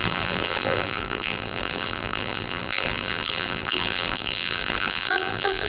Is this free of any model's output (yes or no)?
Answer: no